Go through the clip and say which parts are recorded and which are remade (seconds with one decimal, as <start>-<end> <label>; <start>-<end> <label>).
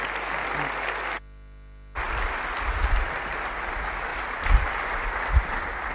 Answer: 0.0-4.1 recorded; 4.1-4.8 remade; 4.8-5.9 recorded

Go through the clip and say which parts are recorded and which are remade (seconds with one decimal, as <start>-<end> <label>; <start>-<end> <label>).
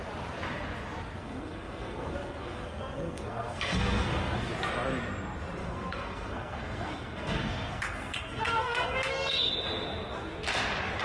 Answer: 0.0-1.2 recorded; 1.2-4.5 remade; 4.5-5.6 recorded; 5.6-9.5 remade; 9.5-11.0 recorded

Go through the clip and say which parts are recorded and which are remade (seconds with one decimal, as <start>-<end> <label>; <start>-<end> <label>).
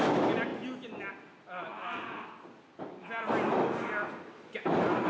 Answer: 0.0-5.1 recorded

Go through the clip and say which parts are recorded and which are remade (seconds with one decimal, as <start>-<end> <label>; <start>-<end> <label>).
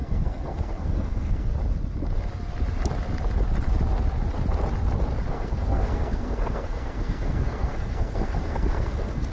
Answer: 0.0-1.5 remade; 1.5-5.3 recorded; 5.3-9.3 remade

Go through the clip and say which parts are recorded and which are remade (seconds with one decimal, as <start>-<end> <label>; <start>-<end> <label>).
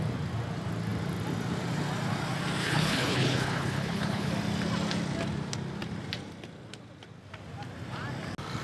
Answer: 0.0-2.6 recorded; 2.6-4.3 remade; 4.3-8.6 recorded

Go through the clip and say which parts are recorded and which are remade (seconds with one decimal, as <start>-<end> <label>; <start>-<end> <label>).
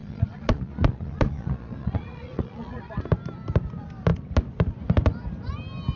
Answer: 0.0-3.0 remade; 3.0-6.0 recorded